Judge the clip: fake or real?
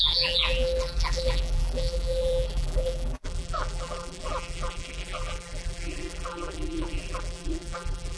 fake